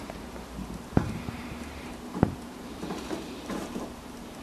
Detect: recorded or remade remade